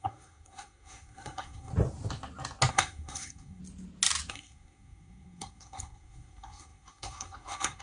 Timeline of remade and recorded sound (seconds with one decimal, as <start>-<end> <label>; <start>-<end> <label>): 0.0-1.7 remade; 1.7-2.7 recorded; 2.7-3.6 remade; 3.6-4.3 recorded; 4.3-7.8 remade